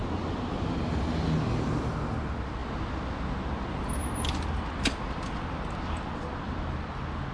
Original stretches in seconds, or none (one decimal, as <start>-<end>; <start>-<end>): 0.0-7.3